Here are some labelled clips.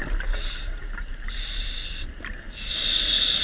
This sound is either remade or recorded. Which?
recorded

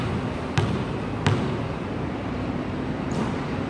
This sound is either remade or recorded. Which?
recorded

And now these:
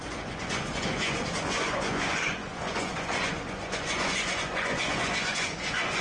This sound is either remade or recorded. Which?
remade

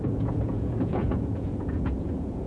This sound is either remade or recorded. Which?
remade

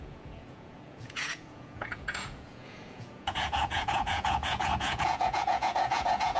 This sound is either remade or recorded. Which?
remade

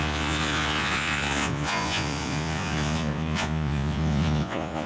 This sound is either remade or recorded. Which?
remade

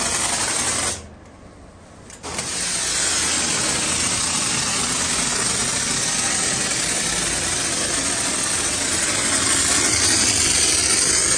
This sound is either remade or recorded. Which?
recorded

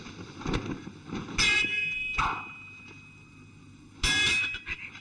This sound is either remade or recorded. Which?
recorded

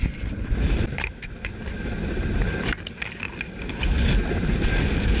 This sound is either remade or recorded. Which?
recorded